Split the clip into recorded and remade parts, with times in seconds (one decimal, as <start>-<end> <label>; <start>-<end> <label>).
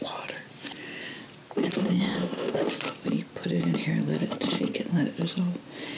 0.0-2.0 recorded; 2.0-2.5 remade; 2.5-6.0 recorded